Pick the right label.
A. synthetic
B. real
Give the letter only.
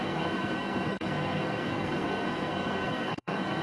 A